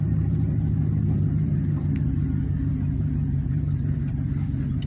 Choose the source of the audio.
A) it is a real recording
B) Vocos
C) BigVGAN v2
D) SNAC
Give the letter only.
C